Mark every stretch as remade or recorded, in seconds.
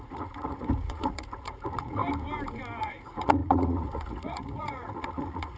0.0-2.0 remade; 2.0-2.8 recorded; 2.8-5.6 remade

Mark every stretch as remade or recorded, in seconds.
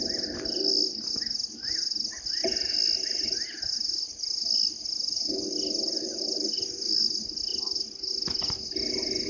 0.0-9.3 recorded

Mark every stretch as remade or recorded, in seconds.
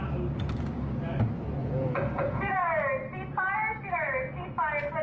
0.0-1.6 recorded; 1.6-2.8 remade; 2.8-5.0 recorded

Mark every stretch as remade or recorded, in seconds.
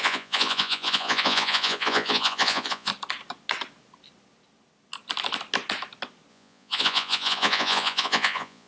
0.0-2.9 remade; 2.9-6.3 recorded; 6.3-8.7 remade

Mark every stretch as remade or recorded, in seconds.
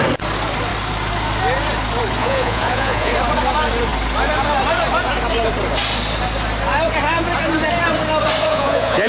0.0-2.2 recorded; 2.2-3.1 remade; 3.1-8.5 recorded; 8.5-9.1 remade